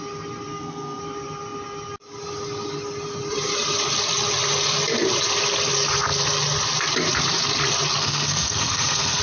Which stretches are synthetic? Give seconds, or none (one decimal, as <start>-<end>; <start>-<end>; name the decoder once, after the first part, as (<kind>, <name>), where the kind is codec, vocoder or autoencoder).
0.5-1.0 (codec, SNAC); 8.0-9.2